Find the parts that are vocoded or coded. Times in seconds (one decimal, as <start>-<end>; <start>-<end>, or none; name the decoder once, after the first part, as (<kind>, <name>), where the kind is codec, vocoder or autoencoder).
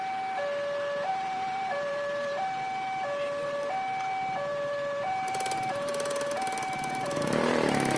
1.1-2.4 (vocoder, BigVGAN v2); 4.5-8.0